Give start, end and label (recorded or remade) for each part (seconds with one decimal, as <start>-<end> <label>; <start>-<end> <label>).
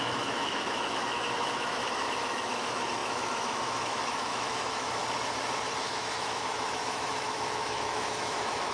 0.0-5.0 remade; 5.0-5.8 recorded; 5.8-8.7 remade